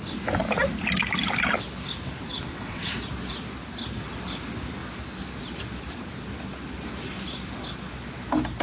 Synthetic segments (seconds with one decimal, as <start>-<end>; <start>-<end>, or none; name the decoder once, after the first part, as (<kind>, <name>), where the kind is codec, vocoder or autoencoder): 2.3-3.0 (vocoder, WaveNeXt)